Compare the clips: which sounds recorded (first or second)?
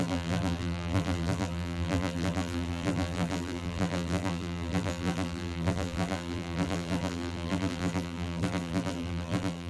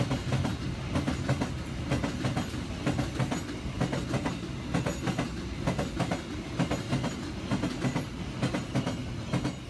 second